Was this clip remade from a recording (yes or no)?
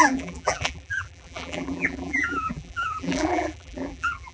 yes